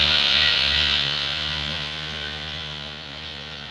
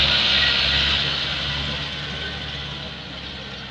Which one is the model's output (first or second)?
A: first